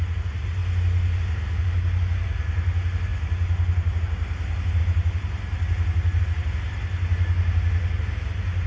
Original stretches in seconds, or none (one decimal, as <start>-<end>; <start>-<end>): 0.0-8.7